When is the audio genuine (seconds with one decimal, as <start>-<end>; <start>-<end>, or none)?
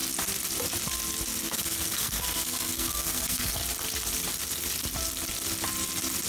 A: 0.0-1.4; 3.6-6.3